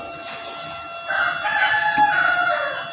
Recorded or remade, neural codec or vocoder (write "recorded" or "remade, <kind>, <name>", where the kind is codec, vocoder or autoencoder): recorded